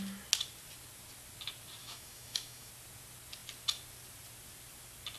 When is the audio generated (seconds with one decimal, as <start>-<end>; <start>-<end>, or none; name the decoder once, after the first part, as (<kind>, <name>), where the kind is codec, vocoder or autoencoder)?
1.8-2.7 (autoencoder, DAC-VAE)